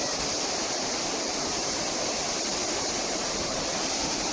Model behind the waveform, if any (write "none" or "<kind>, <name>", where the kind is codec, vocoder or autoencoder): none